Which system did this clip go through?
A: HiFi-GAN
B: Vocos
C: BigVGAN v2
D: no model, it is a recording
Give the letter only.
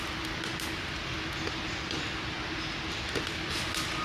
D